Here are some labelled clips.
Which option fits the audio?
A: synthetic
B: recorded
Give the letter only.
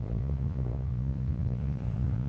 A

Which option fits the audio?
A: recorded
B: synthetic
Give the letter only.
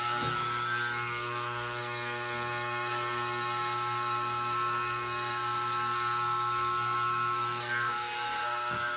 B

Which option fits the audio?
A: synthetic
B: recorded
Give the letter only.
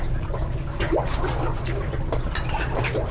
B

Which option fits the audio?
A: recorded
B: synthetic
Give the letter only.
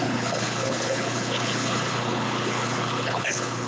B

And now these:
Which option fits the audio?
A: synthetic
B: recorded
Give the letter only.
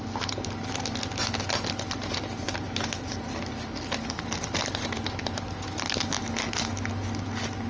B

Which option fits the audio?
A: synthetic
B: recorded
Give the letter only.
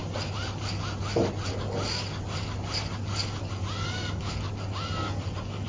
B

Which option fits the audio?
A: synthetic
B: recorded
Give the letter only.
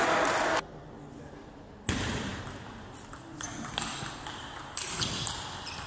B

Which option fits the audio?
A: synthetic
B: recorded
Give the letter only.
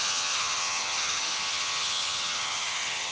A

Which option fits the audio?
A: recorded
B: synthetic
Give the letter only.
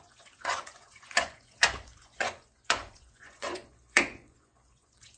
B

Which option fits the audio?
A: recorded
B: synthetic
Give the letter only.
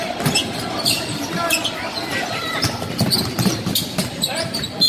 B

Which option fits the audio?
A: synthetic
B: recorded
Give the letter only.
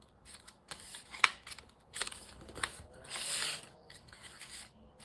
A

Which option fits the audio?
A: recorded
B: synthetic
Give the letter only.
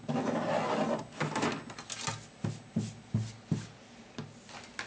A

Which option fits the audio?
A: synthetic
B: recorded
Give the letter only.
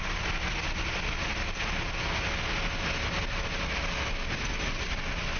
B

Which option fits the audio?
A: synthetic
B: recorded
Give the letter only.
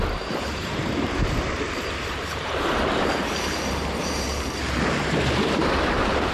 A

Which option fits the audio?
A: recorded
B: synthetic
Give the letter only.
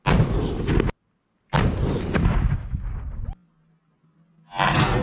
A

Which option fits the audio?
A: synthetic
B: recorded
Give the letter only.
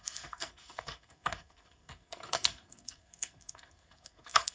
A